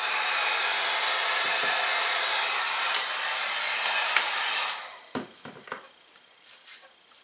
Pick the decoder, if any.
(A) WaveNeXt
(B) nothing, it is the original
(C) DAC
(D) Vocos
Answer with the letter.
B